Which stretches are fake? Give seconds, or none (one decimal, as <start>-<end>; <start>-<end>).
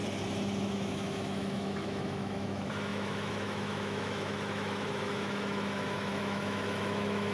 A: 0.6-7.3